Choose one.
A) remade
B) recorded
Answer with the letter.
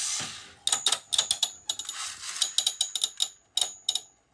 B